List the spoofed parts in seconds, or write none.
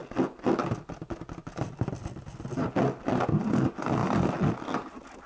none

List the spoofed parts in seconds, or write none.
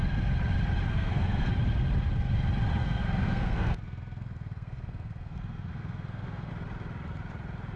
0.9-1.5 (codec, SNAC); 2.8-6.5